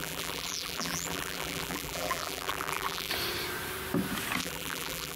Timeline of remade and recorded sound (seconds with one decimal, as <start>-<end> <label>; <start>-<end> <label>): 0.0-3.1 remade; 3.1-4.4 recorded; 4.4-5.2 remade